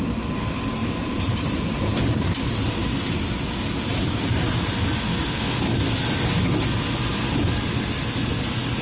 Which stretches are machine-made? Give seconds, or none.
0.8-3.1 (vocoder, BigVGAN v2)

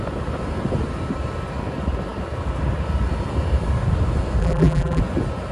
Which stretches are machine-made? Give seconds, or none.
4.4-5.0 (vocoder, BigVGAN v2)

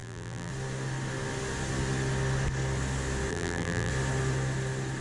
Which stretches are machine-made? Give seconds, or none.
0.0-0.5 (vocoder, BigVGAN v2); 3.3-3.9